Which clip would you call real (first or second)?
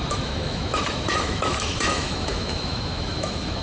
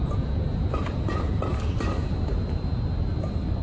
second